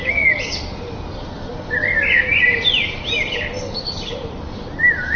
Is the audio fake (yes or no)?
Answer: no